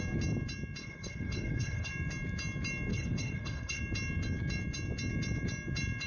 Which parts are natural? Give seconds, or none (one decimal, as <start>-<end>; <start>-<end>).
0.0-0.8; 1.9-2.9; 3.8-6.1